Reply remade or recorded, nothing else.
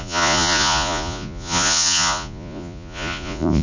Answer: remade